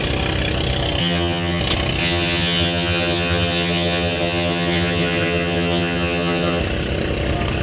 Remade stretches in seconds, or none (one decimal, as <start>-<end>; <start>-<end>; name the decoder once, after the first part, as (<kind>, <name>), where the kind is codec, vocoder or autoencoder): 1.0-1.6 (vocoder, HiFi-GAN); 2.0-6.6